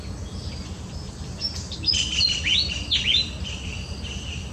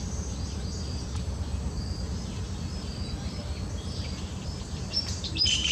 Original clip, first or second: first